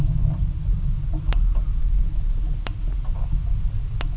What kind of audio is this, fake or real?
real